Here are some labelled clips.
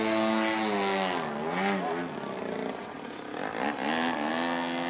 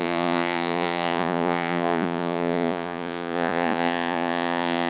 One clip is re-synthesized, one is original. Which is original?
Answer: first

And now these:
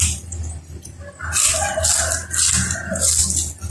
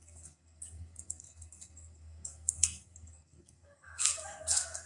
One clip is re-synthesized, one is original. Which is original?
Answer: first